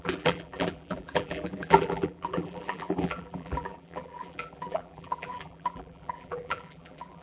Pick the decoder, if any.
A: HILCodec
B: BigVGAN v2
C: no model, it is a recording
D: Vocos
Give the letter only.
B